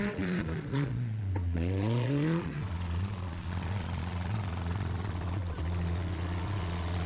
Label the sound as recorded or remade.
remade